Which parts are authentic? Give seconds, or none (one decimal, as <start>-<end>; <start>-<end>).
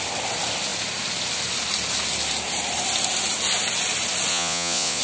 0.0-4.3